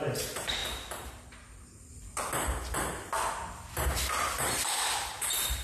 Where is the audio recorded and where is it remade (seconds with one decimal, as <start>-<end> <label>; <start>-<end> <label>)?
0.0-0.6 remade; 0.6-3.9 recorded; 3.9-5.6 remade